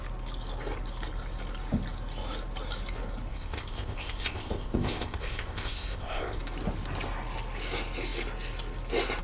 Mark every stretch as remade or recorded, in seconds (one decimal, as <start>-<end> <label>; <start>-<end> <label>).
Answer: 0.0-3.3 recorded; 3.3-6.4 remade; 6.4-9.2 recorded